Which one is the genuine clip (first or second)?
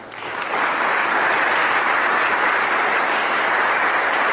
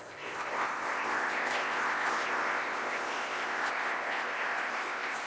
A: first